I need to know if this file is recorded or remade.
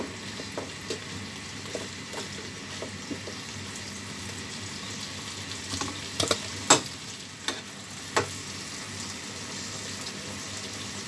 recorded